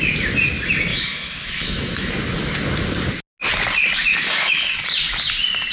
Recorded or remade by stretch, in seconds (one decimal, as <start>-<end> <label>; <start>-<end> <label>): 0.0-0.9 recorded; 0.9-2.1 remade; 2.1-4.1 recorded; 4.1-4.8 remade; 4.8-5.7 recorded